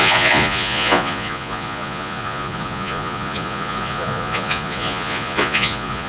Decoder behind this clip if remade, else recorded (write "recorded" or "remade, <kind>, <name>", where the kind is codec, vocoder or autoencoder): remade, vocoder, Vocos